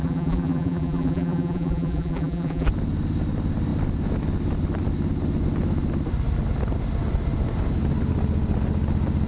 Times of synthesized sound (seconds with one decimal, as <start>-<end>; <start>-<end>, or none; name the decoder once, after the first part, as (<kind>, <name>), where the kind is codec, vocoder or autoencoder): 0.0-2.7 (vocoder, BigVGAN v2)